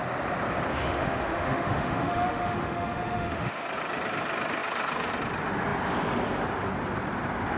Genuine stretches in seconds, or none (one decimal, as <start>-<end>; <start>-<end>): 0.0-0.7; 3.6-7.6